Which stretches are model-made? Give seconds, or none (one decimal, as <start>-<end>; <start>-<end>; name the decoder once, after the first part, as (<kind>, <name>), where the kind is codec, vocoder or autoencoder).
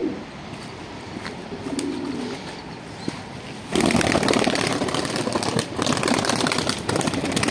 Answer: 3.7-7.0 (vocoder, BigVGAN v2)